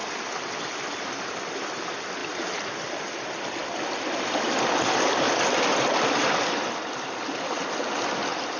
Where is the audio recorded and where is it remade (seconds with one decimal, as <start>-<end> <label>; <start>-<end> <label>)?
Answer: 0.0-2.2 recorded; 2.2-2.9 remade; 2.9-8.6 recorded